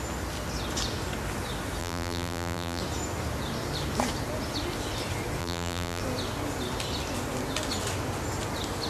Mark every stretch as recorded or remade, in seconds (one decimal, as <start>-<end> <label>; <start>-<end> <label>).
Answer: 0.0-1.8 recorded; 1.8-2.8 remade; 2.8-5.4 recorded; 5.4-6.0 remade; 6.0-8.9 recorded